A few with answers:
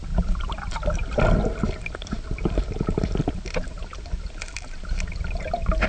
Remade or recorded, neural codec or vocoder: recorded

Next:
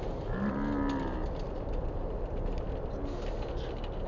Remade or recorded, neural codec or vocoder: recorded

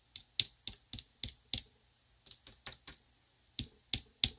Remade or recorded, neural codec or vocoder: recorded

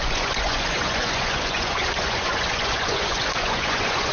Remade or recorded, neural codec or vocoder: remade, vocoder, Vocos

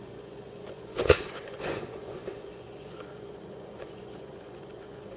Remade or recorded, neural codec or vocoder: remade, vocoder, Vocos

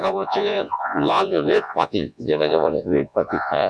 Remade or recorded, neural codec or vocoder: remade, vocoder, Vocos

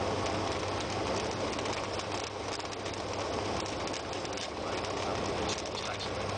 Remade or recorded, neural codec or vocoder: recorded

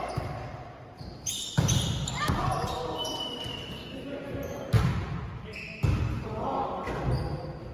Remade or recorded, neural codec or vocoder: recorded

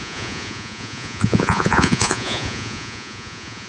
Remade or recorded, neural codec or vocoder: remade, vocoder, Vocos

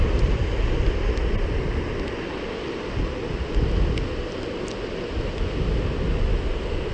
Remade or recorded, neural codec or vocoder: recorded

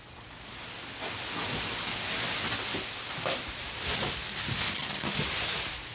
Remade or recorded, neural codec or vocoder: recorded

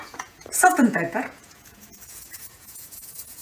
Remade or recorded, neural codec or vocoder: remade, vocoder, Vocos